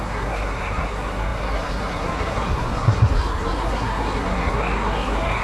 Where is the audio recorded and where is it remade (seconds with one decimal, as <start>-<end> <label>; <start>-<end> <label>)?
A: 0.0-5.4 remade